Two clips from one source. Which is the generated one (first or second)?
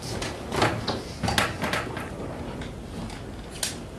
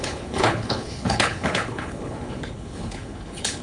second